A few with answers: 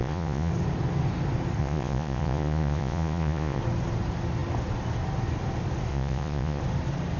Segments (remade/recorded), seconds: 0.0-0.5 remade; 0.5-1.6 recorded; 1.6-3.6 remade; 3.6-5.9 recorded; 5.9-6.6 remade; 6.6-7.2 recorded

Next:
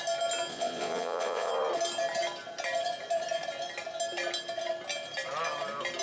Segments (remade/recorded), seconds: 0.0-0.5 recorded; 0.5-1.5 remade; 1.5-6.0 recorded